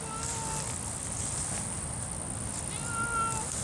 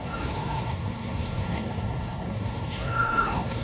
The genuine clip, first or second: first